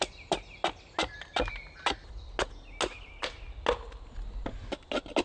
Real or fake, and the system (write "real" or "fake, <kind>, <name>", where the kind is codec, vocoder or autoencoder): real